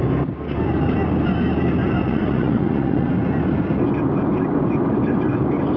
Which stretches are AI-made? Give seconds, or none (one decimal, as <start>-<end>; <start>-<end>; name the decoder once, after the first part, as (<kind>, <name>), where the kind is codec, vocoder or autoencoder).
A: 2.0-3.1 (vocoder, Vocos)